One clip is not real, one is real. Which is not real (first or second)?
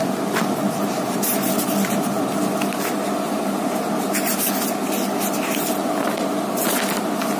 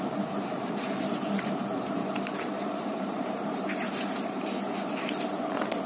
second